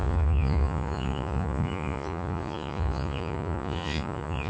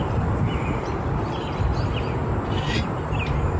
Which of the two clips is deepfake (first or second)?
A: first